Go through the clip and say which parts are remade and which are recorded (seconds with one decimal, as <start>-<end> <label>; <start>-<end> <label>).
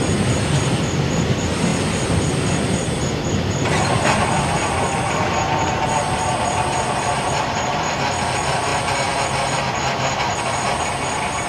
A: 0.0-11.5 recorded